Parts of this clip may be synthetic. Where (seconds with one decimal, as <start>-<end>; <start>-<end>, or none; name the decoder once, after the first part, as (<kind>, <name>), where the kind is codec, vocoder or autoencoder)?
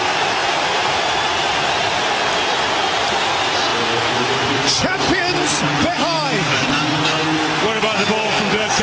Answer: 0.4-2.1 (vocoder, BigVGAN v2); 3.7-4.5